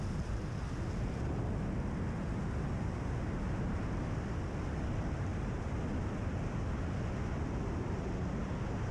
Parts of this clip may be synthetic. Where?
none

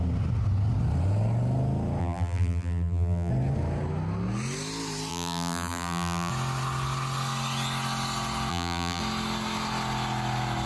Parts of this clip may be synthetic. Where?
2.0-3.3; 5.1-6.3; 8.5-9.0